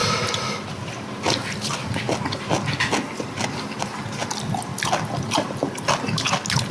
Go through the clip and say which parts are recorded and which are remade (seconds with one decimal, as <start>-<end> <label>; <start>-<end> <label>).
0.0-6.7 recorded

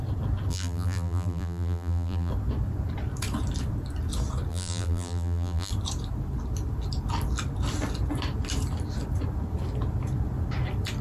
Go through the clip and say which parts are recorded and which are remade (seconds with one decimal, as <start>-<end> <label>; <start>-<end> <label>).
0.0-0.5 recorded; 0.5-2.3 remade; 2.3-4.5 recorded; 4.5-5.7 remade; 5.7-11.0 recorded

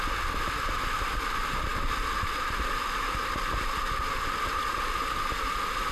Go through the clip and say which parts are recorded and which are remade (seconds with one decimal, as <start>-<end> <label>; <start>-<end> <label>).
0.0-5.9 recorded

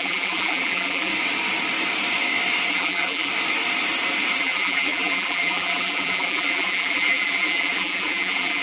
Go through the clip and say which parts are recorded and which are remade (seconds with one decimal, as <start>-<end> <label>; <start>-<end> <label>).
0.0-1.1 remade; 1.1-2.7 recorded; 2.7-3.3 remade; 3.3-4.4 recorded; 4.4-8.6 remade

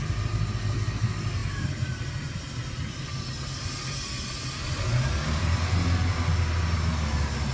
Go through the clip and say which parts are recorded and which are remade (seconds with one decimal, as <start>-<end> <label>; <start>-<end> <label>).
0.0-7.5 recorded

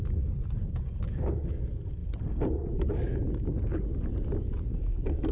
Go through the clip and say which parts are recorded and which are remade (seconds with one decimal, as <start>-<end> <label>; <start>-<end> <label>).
0.0-5.3 recorded

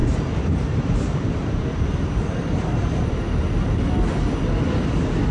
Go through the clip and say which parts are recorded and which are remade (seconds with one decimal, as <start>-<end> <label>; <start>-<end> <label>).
0.0-3.2 remade; 3.2-5.3 recorded

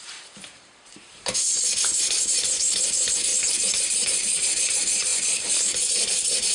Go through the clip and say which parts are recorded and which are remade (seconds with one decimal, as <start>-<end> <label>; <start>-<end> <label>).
0.0-6.5 remade